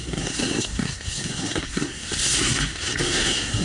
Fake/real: fake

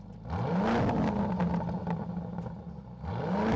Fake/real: real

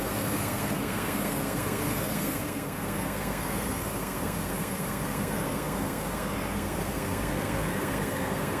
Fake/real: fake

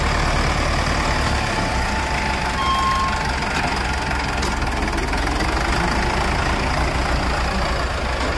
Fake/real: real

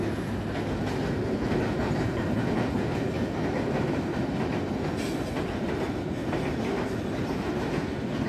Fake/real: real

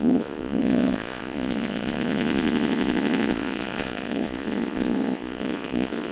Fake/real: fake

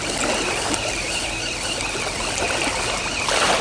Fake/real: real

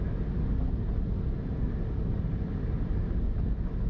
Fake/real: real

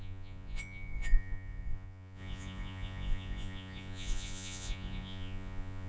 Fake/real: fake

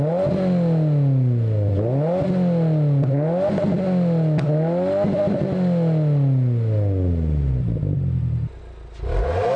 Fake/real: real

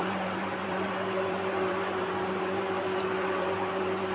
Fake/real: fake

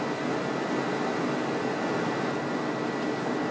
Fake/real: real